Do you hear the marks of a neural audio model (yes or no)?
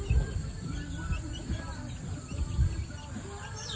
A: no